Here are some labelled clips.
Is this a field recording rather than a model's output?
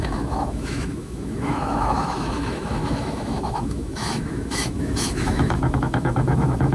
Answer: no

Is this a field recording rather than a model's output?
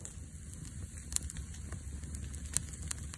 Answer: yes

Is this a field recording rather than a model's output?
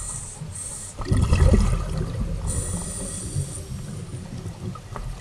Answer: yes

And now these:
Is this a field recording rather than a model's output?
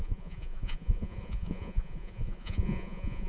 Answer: no